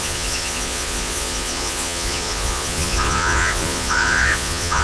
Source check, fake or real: fake